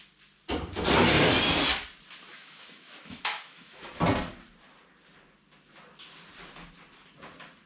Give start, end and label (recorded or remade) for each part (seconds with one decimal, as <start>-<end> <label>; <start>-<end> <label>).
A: 0.0-2.3 recorded; 2.3-3.9 remade; 3.9-7.7 recorded